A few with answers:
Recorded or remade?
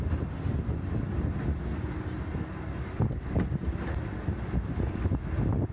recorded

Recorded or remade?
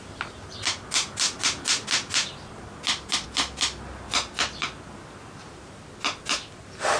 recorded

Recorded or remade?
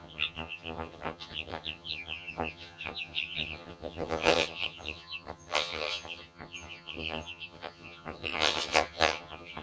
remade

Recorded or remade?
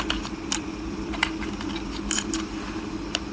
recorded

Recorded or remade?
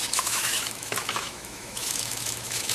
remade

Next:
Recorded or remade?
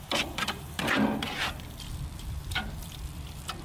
remade